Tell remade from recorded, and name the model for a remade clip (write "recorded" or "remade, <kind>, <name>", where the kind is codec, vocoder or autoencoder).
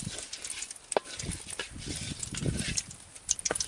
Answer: recorded